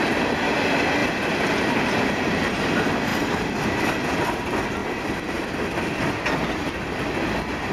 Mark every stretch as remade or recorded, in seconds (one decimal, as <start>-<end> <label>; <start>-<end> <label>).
0.0-1.0 recorded; 1.0-2.4 remade; 2.4-3.1 recorded; 3.1-4.1 remade; 4.1-7.7 recorded

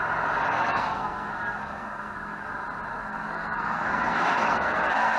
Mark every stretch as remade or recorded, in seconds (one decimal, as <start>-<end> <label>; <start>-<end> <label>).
0.0-0.5 recorded; 0.5-2.5 remade; 2.5-2.9 recorded; 2.9-5.2 remade

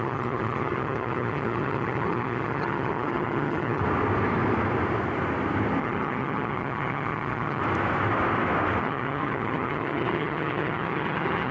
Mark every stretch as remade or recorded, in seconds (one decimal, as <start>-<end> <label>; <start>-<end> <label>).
0.0-3.8 remade; 3.8-5.8 recorded; 5.8-7.6 remade; 7.6-8.8 recorded; 8.8-11.5 remade

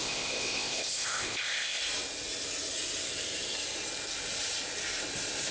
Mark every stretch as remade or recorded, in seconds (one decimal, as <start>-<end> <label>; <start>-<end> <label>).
0.0-1.8 remade; 1.8-5.5 recorded

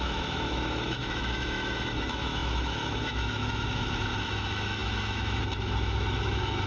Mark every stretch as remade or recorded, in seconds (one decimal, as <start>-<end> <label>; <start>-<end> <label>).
0.0-6.7 remade

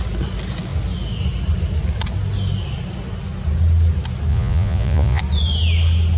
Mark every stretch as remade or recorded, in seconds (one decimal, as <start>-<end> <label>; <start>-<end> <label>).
0.0-4.3 recorded; 4.3-5.2 remade; 5.2-6.2 recorded

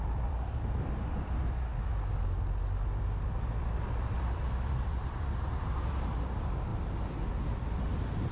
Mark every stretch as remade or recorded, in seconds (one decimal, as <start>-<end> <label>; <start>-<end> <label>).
0.0-1.9 remade; 1.9-3.0 recorded; 3.0-8.3 remade

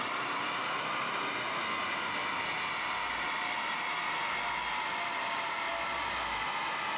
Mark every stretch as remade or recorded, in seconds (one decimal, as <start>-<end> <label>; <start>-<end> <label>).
0.0-0.9 remade; 0.9-1.8 recorded; 1.8-2.2 remade; 2.2-4.9 recorded; 4.9-5.7 remade; 5.7-7.0 recorded